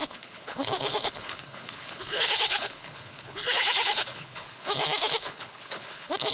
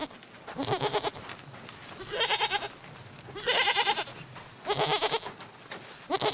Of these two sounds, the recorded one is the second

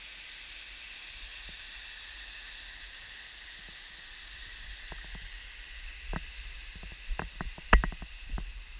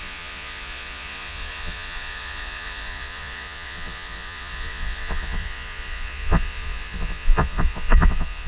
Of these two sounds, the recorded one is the first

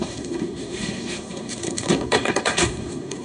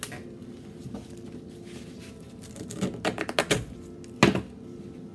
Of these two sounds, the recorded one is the second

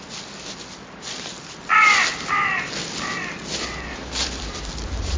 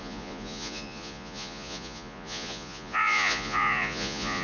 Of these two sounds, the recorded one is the first